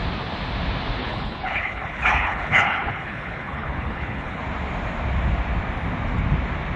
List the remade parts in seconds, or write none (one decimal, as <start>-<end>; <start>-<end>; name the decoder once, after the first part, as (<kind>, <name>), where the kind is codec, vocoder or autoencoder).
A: 1.0-4.4 (codec, HILCodec)